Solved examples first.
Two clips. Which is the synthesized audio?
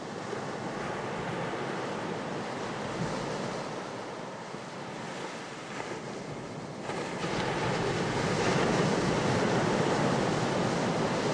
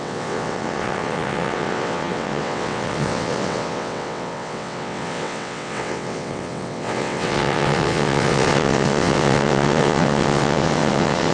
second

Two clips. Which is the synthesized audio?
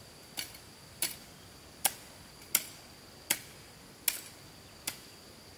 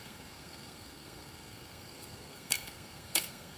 second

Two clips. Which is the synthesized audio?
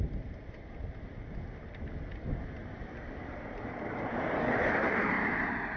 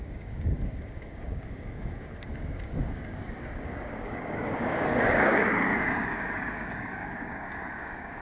second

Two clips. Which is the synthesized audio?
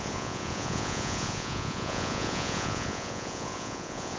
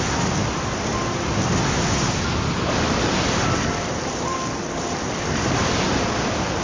first